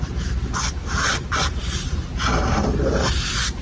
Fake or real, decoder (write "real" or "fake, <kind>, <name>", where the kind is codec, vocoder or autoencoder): real